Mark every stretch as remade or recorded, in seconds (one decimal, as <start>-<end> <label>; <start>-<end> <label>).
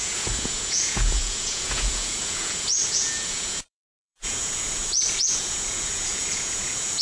0.0-7.0 remade